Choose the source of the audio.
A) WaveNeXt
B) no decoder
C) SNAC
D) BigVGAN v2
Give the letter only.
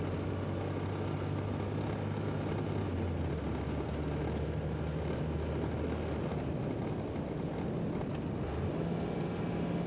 B